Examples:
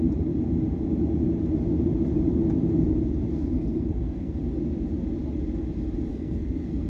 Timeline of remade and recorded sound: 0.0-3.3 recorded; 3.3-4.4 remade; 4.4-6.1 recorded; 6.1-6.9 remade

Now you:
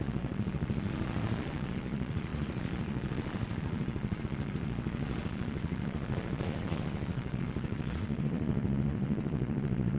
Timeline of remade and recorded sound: 0.0-10.0 remade

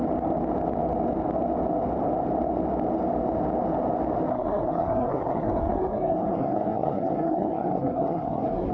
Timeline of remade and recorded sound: 0.0-4.3 recorded; 4.3-8.7 remade